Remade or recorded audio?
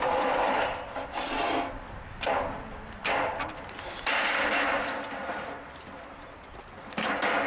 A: recorded